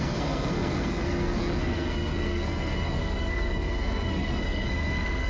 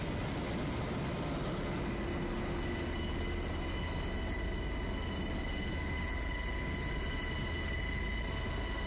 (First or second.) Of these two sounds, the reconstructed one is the first